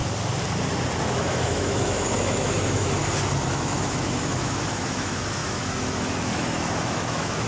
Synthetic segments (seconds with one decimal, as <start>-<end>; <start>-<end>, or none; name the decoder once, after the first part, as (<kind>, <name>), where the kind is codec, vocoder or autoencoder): 1.0-3.0 (autoencoder, DAC-VAE); 3.5-7.5